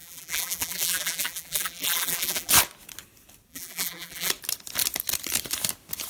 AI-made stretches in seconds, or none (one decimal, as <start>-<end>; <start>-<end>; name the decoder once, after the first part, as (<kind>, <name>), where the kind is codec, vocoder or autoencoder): 0.0-2.5 (vocoder, BigVGAN v2); 3.5-4.3